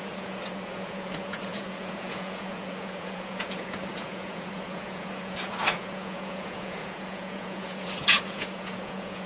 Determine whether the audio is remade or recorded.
remade